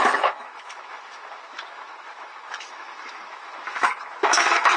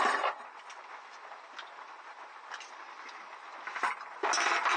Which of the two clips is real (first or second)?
second